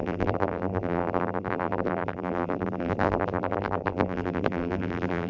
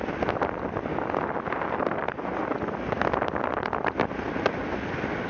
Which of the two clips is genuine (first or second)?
second